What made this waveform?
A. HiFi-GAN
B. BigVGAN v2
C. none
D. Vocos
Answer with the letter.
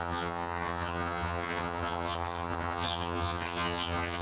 A